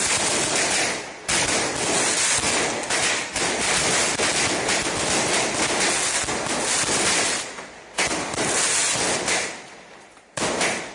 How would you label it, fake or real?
real